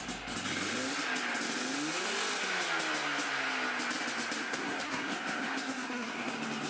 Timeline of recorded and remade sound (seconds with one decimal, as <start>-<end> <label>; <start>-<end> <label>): 0.0-4.4 recorded; 4.4-6.3 remade; 6.3-6.7 recorded